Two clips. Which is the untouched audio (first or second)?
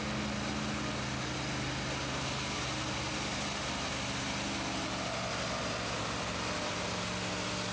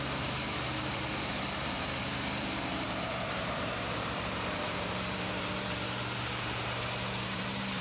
first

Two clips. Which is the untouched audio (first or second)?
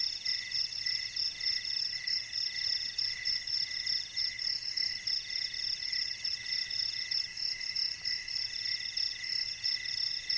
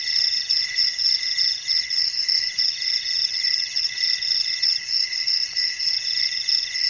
first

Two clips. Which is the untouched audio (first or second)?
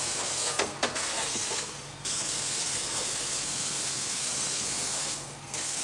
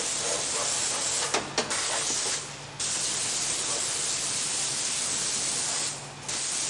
second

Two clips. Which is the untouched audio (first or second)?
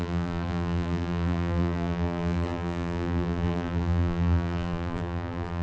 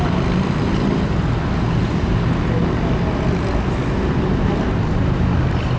second